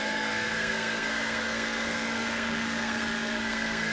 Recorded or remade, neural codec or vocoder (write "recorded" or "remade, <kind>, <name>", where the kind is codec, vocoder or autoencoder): remade, codec, SNAC